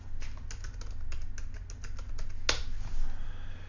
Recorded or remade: recorded